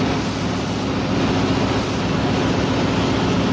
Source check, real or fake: real